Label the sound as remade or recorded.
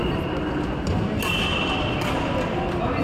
recorded